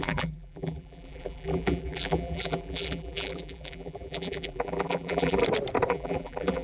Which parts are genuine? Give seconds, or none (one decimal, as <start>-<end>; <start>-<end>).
5.4-5.9